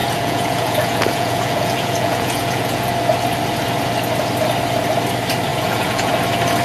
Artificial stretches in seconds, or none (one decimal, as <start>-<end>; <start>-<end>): 0.0-2.9; 5.5-6.1